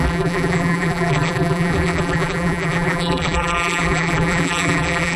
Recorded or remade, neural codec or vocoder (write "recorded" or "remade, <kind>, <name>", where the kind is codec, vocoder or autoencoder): remade, vocoder, BigVGAN v2